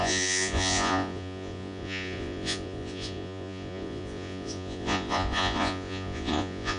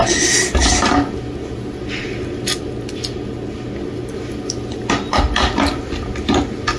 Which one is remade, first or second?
first